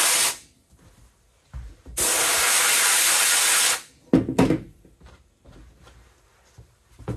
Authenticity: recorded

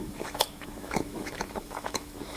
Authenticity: remade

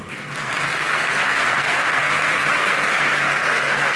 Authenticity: remade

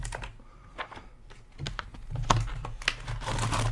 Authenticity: recorded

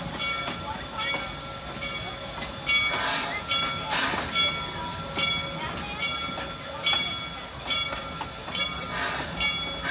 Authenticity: recorded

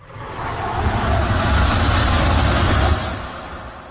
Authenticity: recorded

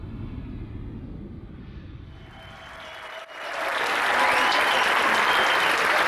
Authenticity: recorded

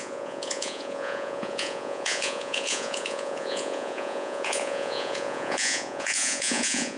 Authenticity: remade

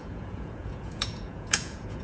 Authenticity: remade